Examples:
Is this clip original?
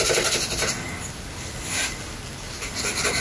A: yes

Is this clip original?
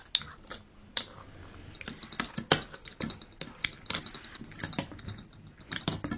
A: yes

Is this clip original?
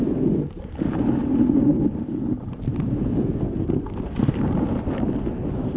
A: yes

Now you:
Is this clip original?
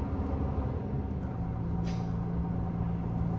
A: yes